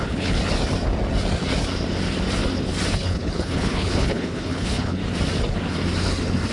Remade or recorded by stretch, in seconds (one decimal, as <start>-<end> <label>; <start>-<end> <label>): 0.0-0.4 remade; 0.4-2.9 recorded; 2.9-5.0 remade; 5.0-6.5 recorded